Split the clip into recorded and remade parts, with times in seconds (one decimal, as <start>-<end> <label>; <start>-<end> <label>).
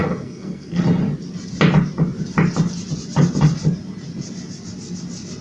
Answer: 0.0-0.8 remade; 0.8-5.4 recorded